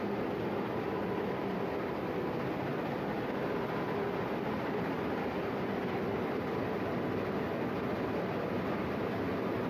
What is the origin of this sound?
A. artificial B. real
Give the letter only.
B